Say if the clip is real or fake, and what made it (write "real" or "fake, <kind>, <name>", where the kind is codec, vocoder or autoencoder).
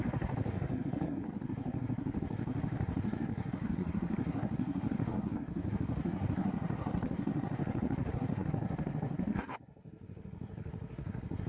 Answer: fake, codec, SNAC